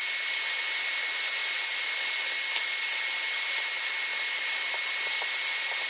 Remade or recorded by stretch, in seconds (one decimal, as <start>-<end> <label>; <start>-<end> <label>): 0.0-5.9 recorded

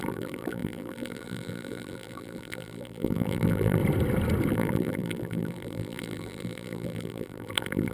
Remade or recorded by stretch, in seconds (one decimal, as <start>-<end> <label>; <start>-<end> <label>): 0.0-3.8 remade; 3.8-4.5 recorded; 4.5-7.9 remade

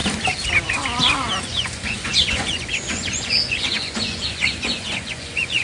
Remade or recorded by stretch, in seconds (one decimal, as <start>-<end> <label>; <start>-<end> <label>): 0.0-1.4 recorded; 1.4-5.6 remade

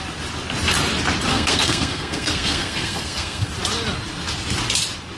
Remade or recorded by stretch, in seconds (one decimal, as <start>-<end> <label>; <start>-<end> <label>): 0.0-1.3 recorded; 1.3-3.5 remade; 3.5-5.2 recorded

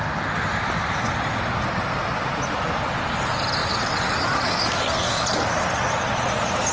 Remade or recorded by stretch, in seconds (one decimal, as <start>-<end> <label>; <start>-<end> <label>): 0.0-6.7 recorded

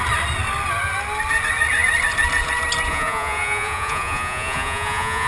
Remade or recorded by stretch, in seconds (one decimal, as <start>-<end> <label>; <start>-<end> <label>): 0.0-2.9 recorded; 2.9-5.3 remade

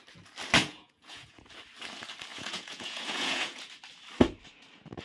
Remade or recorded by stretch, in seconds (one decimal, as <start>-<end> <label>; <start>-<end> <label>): 0.0-0.6 recorded; 0.6-1.4 remade; 1.4-2.3 recorded; 2.3-3.7 remade; 3.7-5.0 recorded